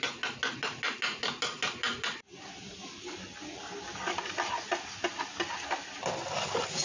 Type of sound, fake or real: real